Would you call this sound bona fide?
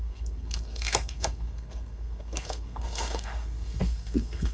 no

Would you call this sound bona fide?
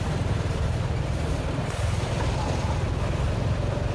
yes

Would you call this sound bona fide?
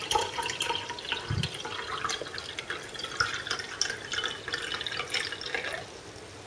yes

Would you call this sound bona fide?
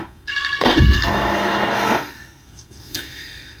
no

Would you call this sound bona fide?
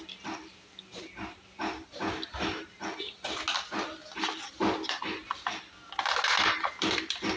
yes